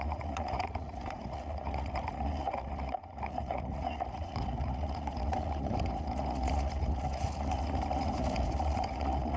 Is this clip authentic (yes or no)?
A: no